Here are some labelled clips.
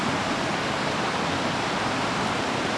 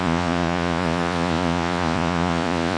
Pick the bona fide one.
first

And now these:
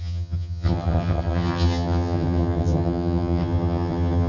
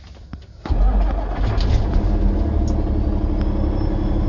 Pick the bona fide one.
second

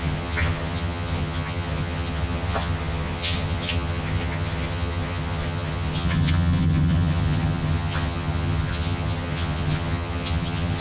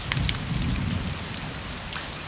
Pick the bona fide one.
second